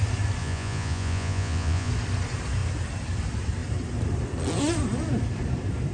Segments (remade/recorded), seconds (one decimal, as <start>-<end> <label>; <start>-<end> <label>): 0.0-0.4 recorded; 0.4-1.9 remade; 1.9-5.9 recorded